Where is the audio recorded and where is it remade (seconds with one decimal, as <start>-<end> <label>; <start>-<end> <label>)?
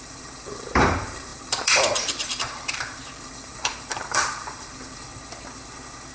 0.0-5.1 remade; 5.1-6.1 recorded